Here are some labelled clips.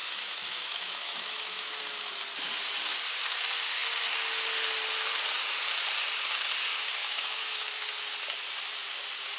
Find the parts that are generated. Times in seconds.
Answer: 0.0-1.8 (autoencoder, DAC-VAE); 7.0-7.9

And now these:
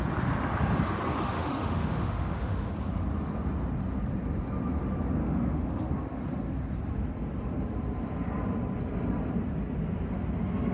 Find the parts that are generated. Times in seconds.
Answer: 1.3-2.7 (autoencoder, DAC-VAE); 5.2-5.9

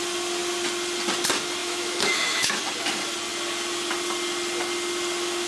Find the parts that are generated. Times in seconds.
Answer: 1.6-2.6 (autoencoder, DAC-VAE)

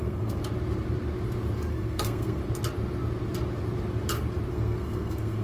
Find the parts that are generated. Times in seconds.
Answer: 0.0-0.4 (codec, SNAC); 1.7-2.4; 4.5-5.4